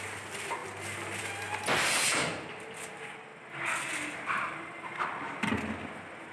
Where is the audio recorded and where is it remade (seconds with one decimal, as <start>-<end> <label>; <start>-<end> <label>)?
0.0-6.3 recorded